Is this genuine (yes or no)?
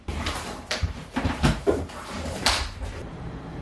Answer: no